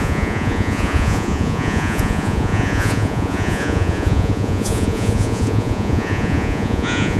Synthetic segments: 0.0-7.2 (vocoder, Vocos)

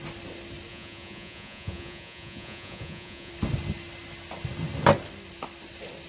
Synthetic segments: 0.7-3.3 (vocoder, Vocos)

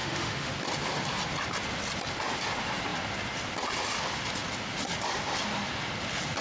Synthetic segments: 0.0-0.5 (autoencoder, DAC-VAE)

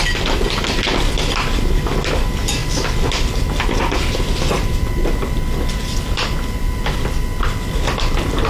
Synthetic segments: none

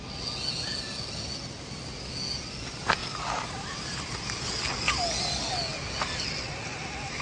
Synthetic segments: none

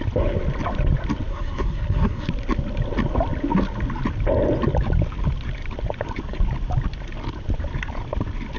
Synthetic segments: 1.3-2.3 (codec, SNAC)

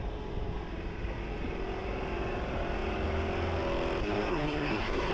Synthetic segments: 4.0-5.1 (codec, SNAC)